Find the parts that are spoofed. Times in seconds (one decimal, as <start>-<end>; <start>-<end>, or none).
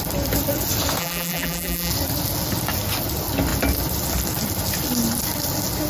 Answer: 1.0-1.9